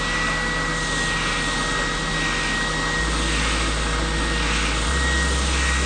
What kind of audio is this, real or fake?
real